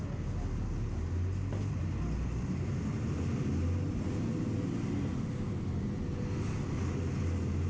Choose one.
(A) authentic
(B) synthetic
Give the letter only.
A